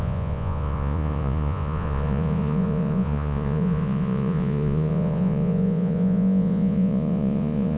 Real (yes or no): no